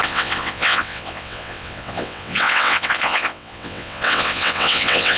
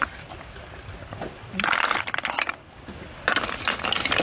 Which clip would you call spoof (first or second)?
first